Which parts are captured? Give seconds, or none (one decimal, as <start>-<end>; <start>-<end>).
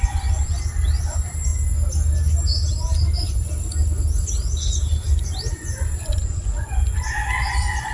0.6-6.0